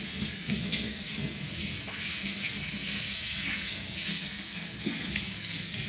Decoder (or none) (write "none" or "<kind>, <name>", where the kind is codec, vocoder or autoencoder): codec, SNAC